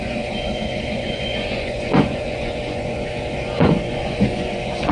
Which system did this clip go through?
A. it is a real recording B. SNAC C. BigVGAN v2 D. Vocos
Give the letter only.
D